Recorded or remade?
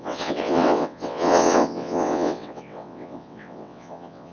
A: remade